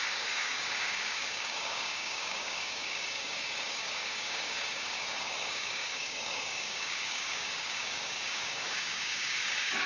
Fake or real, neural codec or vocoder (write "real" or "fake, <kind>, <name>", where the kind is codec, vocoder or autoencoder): fake, codec, DAC